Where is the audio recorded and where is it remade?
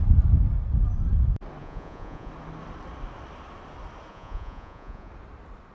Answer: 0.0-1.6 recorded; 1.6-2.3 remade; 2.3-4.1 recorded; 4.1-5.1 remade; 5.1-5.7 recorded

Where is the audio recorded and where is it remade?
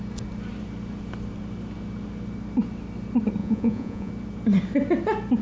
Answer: 0.0-3.4 recorded; 3.4-4.1 remade; 4.1-5.4 recorded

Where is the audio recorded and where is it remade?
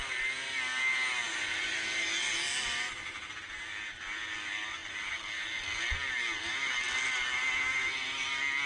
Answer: 0.0-8.7 recorded